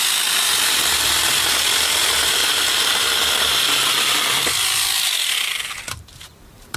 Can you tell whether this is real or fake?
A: real